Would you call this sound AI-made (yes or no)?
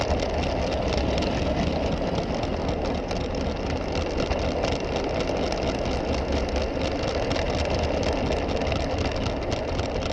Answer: no